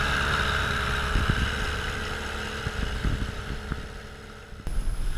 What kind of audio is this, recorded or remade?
recorded